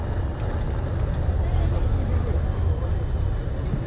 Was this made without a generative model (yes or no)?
yes